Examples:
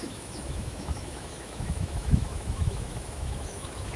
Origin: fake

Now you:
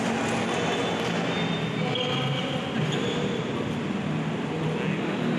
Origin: real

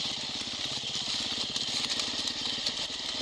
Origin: real